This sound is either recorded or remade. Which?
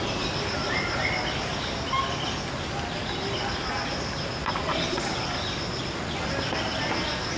recorded